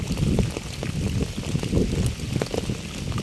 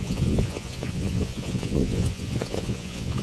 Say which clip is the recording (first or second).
first